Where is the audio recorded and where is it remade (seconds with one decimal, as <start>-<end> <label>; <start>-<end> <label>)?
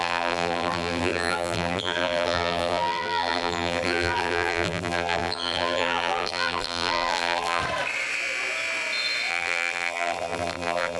0.0-7.6 remade; 7.6-9.3 recorded; 9.3-11.0 remade